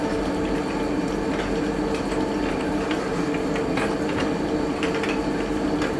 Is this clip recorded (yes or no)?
yes